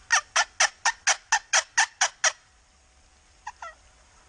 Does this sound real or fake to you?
real